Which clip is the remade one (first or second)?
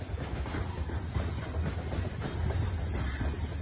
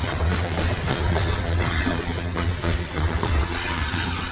second